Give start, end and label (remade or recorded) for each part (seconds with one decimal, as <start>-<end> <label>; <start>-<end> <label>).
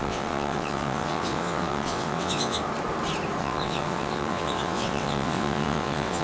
0.0-2.6 remade; 2.6-3.4 recorded; 3.4-6.2 remade